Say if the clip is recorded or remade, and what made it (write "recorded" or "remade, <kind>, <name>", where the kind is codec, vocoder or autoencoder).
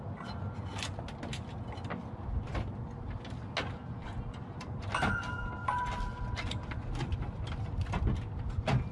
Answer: recorded